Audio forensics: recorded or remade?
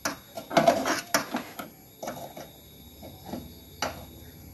recorded